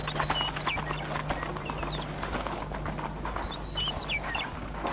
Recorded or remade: recorded